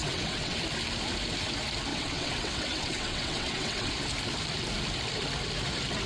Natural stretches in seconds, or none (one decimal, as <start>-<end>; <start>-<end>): 0.6-1.9; 3.9-6.1